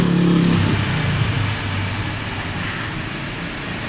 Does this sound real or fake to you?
real